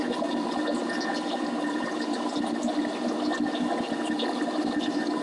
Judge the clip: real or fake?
real